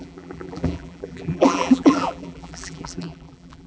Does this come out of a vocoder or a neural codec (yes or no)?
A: yes